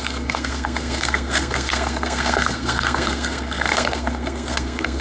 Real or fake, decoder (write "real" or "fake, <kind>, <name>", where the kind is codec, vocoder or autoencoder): fake, codec, SNAC